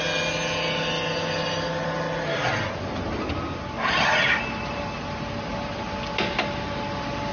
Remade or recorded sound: recorded